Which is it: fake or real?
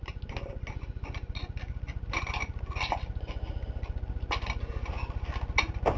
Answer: real